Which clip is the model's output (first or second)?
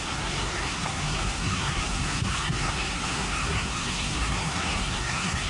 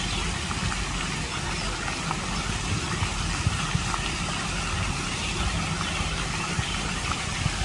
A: first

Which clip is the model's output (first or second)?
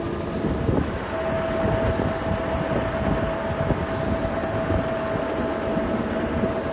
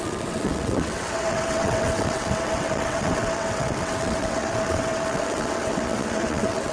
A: second